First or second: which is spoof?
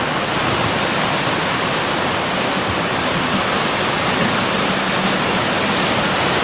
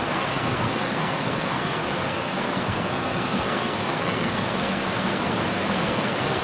second